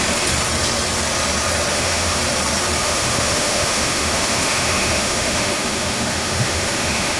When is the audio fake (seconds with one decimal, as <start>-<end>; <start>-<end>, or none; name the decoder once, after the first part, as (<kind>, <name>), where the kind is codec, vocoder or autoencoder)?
1.7-2.2 (autoencoder, DAC-VAE); 2.8-7.2